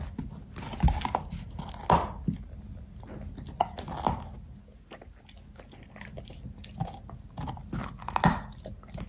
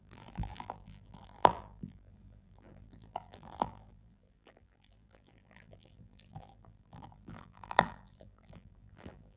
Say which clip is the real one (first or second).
first